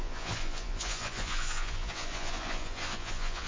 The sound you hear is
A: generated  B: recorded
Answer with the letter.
A